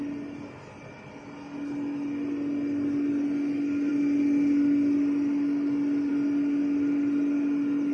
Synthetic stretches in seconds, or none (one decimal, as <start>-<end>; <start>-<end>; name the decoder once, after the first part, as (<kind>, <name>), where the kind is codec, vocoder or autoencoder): none